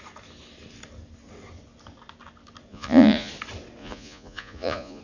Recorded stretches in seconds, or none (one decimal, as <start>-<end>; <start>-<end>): 0.0-2.7; 3.3-3.8